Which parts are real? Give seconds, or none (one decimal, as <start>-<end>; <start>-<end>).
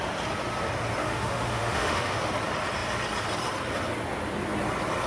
0.0-1.0; 2.3-5.1